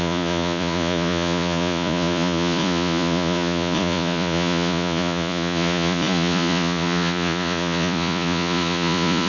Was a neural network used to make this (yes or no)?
yes